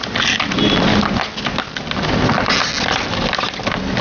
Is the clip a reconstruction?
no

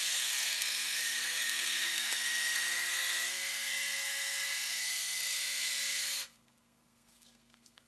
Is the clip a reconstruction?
yes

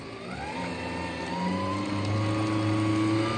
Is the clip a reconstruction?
no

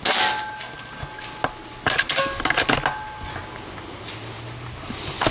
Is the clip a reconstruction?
no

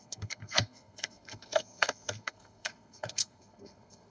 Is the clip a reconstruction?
yes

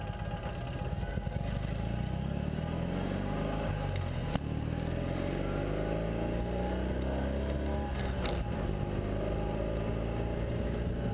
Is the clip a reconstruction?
no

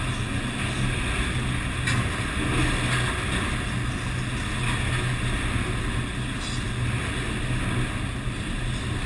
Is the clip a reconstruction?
no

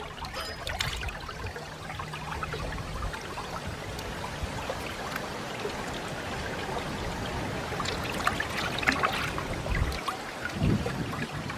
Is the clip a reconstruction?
no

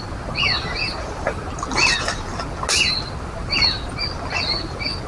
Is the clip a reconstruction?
no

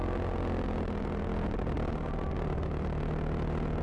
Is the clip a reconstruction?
no